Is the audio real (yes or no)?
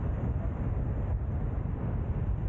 yes